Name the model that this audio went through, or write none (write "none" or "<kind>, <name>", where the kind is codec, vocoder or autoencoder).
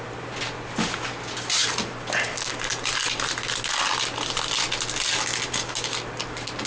none